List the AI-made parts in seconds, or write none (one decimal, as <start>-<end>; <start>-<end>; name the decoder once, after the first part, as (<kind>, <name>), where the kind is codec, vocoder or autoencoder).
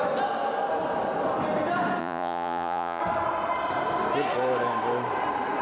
2.0-3.0 (vocoder, Vocos)